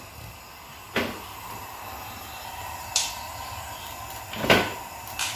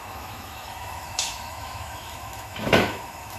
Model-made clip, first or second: second